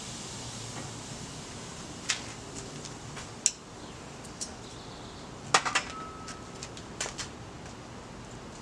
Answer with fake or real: real